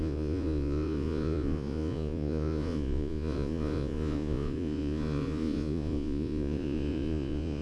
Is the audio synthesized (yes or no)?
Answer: yes